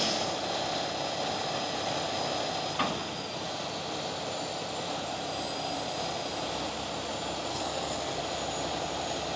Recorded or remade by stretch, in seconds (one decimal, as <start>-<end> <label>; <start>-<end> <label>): 0.0-7.5 recorded; 7.5-8.2 remade; 8.2-9.4 recorded